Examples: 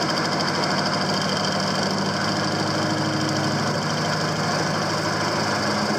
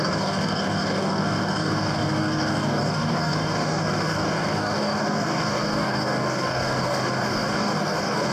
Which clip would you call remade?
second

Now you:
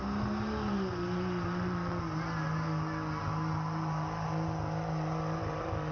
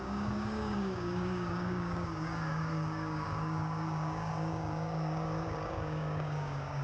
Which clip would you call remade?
second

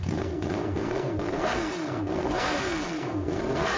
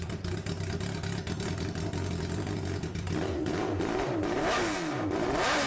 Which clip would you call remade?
first